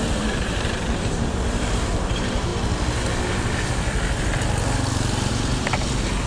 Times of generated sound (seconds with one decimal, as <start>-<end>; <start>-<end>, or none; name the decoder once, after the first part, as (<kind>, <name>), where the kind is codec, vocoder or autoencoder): 0.0-2.5 (vocoder, BigVGAN v2); 5.3-6.3